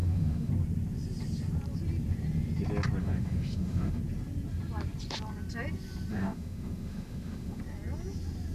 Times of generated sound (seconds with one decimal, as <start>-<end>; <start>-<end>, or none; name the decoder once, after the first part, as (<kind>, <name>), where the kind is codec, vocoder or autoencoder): 0.0-0.5 (autoencoder, DAC-VAE); 3.0-4.0; 6.1-7.6